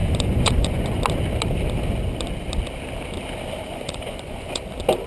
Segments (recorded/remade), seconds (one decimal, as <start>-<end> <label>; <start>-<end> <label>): 0.0-1.0 remade; 1.0-3.7 recorded; 3.7-4.6 remade; 4.6-5.1 recorded